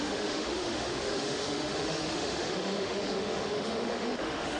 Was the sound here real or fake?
fake